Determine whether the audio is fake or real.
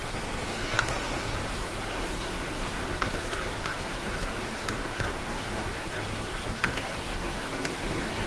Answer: fake